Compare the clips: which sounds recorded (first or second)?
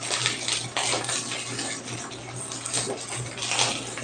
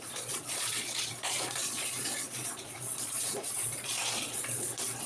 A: first